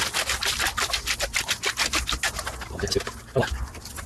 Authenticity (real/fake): real